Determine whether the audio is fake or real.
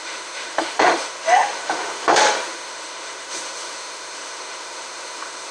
fake